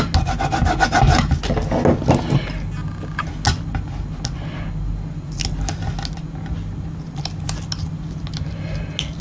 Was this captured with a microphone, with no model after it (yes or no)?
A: yes